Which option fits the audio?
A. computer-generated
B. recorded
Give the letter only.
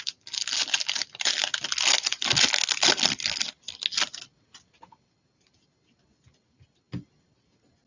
B